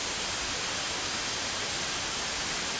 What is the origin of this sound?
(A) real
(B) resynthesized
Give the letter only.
A